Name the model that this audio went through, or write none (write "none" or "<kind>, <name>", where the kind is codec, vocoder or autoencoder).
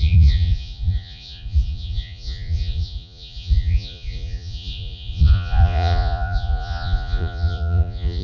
vocoder, Vocos